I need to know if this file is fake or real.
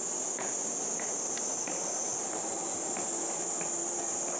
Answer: real